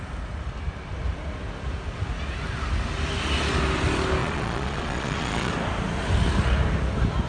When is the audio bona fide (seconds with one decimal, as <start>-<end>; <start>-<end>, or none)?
0.0-4.2; 5.5-7.3

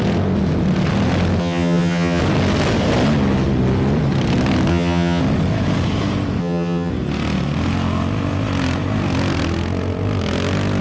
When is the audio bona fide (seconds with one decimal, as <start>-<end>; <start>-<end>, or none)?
0.0-1.4; 2.2-4.7; 5.2-6.4; 6.9-10.8

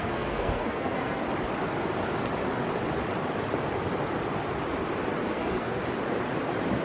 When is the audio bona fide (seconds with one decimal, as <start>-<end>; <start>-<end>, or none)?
1.2-5.3; 5.8-6.8

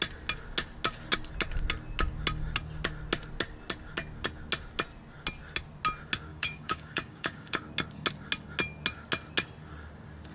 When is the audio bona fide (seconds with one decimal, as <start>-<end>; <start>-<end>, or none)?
0.0-6.3; 7.6-10.3